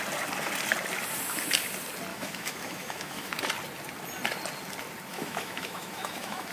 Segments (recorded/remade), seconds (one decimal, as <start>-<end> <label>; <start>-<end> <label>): 0.0-2.1 recorded; 2.1-3.4 remade; 3.4-5.1 recorded; 5.1-6.5 remade

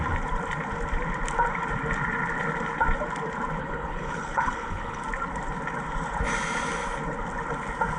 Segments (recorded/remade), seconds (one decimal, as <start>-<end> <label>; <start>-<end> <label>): 0.0-3.6 recorded; 3.6-5.0 remade; 5.0-8.0 recorded

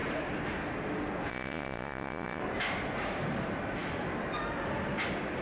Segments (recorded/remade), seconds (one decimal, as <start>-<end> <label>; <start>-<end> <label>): 0.0-1.3 recorded; 1.3-2.4 remade; 2.4-5.4 recorded

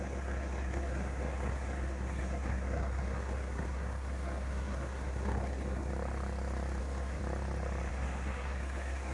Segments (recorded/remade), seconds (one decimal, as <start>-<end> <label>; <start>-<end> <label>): 0.0-5.9 remade; 5.9-6.8 recorded; 6.8-7.2 remade; 7.2-7.9 recorded; 7.9-9.1 remade

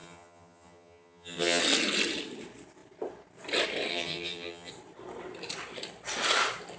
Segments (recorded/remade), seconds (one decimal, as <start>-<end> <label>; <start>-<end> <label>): 0.0-1.6 remade; 1.6-3.9 recorded; 3.9-4.7 remade; 4.7-6.8 recorded

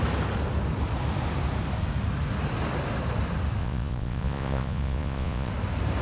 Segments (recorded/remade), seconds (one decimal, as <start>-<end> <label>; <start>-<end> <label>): 0.0-3.6 recorded; 3.6-5.5 remade; 5.5-6.0 recorded

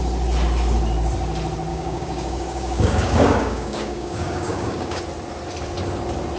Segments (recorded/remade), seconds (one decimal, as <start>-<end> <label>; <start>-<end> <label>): 0.0-1.7 recorded; 1.7-5.0 remade; 5.0-6.4 recorded